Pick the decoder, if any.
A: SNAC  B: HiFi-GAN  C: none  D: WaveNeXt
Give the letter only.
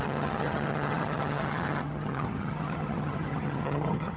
B